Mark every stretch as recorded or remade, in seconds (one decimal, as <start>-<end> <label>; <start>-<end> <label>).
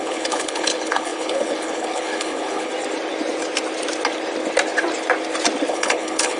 0.0-2.7 remade; 2.7-5.7 recorded; 5.7-6.4 remade